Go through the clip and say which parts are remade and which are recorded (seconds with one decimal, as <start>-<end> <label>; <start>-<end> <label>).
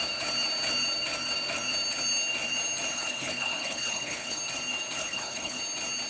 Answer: 0.0-2.9 recorded; 2.9-4.4 remade; 4.4-5.0 recorded; 5.0-5.6 remade; 5.6-6.1 recorded